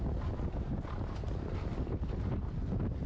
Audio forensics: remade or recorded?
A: recorded